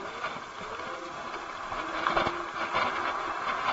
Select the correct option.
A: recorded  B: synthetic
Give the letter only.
A